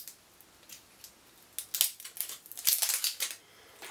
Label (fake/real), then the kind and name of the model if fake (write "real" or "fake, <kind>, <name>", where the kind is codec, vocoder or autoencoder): real